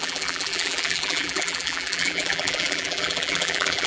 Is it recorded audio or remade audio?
remade